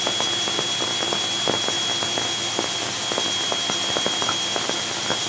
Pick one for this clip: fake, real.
real